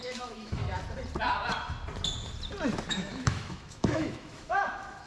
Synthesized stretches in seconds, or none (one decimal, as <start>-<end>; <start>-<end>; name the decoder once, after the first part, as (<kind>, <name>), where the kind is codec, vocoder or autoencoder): 0.0-0.6 (autoencoder, DAC-VAE); 2.9-5.1